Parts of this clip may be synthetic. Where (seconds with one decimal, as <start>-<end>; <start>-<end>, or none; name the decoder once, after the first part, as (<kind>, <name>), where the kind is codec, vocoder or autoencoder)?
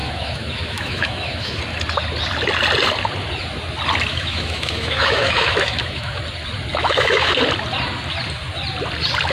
0.0-1.6 (autoencoder, DAC-VAE); 4.1-6.2; 6.7-7.4